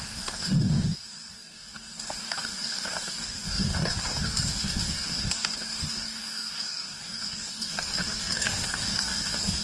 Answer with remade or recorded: remade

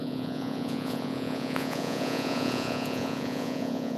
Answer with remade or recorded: remade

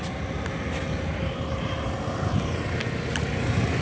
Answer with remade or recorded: recorded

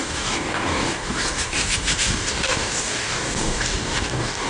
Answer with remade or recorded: remade